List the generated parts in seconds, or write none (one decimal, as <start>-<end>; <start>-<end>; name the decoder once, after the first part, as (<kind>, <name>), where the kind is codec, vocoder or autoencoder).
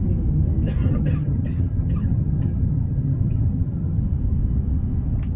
0.8-4.0 (vocoder, HiFi-GAN)